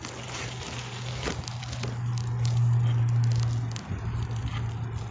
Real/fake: real